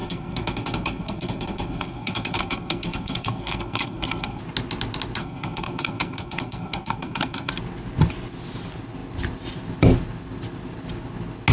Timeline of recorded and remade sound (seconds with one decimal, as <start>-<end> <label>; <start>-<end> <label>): 0.0-4.4 remade; 4.4-5.2 recorded; 5.2-7.5 remade; 7.5-11.5 recorded